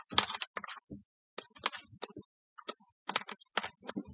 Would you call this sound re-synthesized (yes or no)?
no